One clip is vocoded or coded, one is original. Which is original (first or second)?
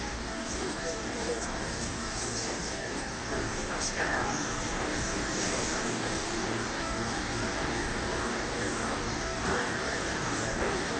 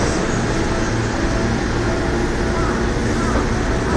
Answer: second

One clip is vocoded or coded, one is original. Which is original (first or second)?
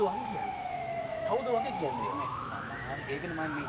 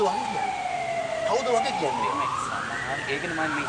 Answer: second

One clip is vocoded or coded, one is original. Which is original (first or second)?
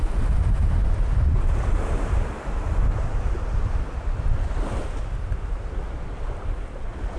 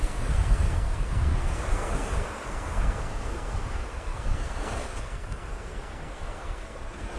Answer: first